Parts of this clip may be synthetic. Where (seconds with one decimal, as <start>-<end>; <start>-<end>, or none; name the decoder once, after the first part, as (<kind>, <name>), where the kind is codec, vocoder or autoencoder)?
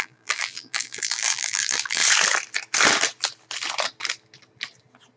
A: 0.0-2.0 (vocoder, BigVGAN v2)